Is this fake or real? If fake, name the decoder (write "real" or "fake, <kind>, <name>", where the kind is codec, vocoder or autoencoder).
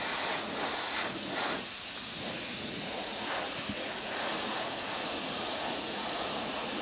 fake, vocoder, Vocos